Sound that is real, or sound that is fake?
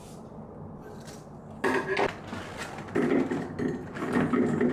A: real